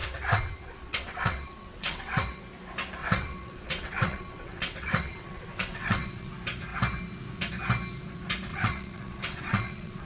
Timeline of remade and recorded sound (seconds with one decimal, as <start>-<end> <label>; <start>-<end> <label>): 0.0-2.4 remade; 2.4-3.0 recorded; 3.0-6.3 remade; 6.3-8.5 recorded; 8.5-10.1 remade